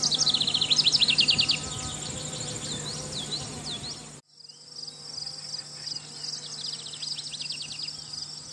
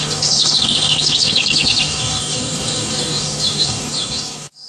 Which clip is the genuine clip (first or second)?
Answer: first